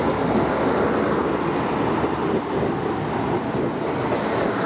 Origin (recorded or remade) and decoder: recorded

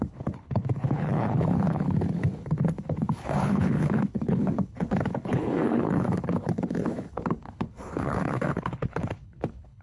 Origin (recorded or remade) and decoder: remade, codec, HILCodec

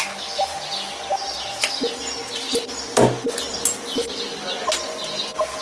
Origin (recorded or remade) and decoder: recorded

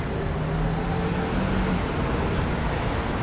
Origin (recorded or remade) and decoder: recorded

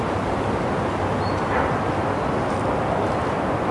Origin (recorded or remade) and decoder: recorded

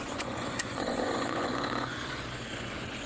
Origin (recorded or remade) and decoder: remade, vocoder, Vocos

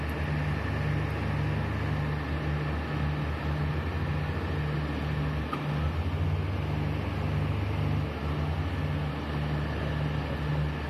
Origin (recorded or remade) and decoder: recorded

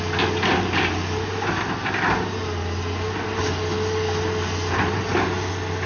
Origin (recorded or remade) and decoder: recorded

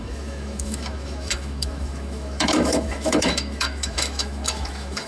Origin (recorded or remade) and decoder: remade, autoencoder, DAC-VAE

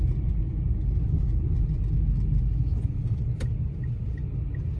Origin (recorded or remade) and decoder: recorded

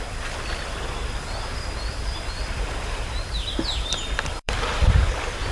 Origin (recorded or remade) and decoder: remade, vocoder, BigVGAN v2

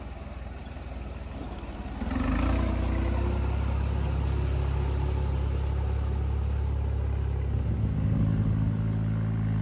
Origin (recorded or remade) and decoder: recorded